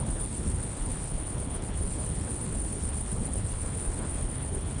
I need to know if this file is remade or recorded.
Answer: remade